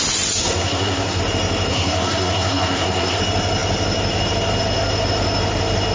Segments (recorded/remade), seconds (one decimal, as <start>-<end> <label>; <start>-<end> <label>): 0.0-0.4 recorded; 0.4-1.2 remade; 1.2-1.7 recorded; 1.7-3.2 remade; 3.2-5.9 recorded